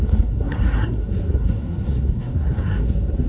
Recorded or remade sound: remade